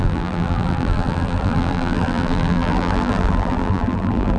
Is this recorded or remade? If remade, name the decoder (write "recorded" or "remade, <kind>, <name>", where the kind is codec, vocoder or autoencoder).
remade, vocoder, BigVGAN v2